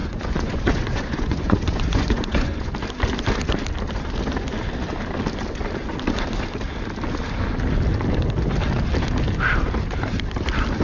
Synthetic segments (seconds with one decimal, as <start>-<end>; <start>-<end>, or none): 0.0-2.7